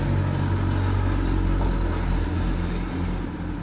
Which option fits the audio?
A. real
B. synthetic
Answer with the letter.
A